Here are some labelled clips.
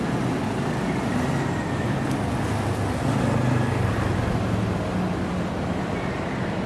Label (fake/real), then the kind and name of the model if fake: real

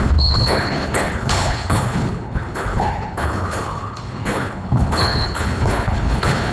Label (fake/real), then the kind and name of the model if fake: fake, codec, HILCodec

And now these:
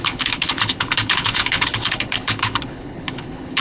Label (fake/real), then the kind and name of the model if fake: fake, codec, HILCodec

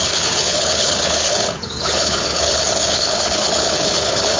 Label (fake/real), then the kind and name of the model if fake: fake, codec, HILCodec